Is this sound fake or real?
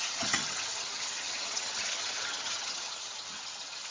fake